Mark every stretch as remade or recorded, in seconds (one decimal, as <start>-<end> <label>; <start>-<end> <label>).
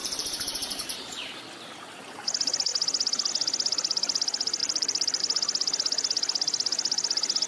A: 0.0-1.4 remade; 1.4-4.6 recorded; 4.6-5.2 remade; 5.2-7.5 recorded